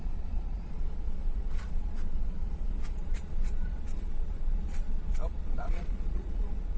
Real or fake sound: fake